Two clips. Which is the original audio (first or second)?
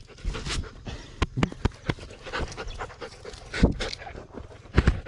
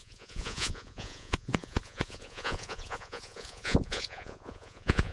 first